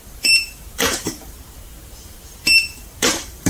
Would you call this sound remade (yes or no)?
yes